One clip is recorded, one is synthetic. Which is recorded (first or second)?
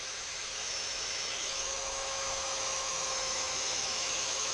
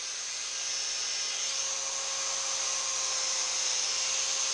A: second